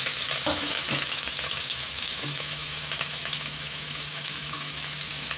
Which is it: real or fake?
fake